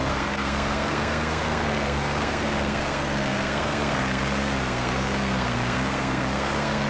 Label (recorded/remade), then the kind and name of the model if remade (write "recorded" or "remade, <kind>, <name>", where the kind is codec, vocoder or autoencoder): remade, codec, SNAC